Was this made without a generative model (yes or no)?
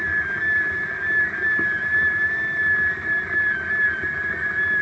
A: yes